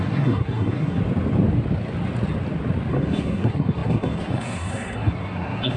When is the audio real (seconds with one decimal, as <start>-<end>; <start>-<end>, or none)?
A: 1.0-2.9